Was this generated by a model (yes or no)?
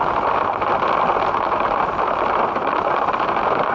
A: no